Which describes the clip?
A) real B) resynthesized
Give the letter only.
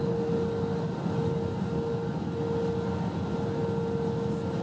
A